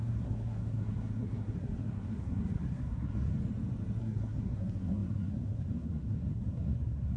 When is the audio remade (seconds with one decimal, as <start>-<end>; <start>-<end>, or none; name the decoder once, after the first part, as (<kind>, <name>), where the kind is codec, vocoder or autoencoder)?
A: 0.0-3.3 (codec, SNAC); 4.0-7.2